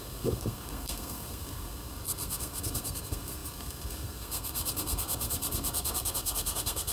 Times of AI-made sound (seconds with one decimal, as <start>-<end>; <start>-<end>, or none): 0.0-6.9